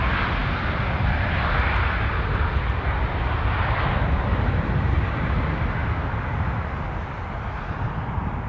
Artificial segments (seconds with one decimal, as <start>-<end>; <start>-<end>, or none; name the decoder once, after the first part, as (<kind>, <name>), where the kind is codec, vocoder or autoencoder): none